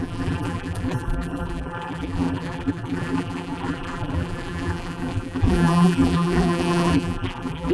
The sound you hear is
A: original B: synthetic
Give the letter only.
B